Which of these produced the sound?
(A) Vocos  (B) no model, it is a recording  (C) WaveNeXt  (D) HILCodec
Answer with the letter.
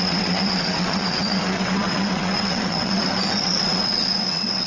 C